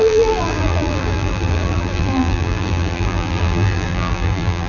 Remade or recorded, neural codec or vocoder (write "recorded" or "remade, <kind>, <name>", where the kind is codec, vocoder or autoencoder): remade, vocoder, BigVGAN v2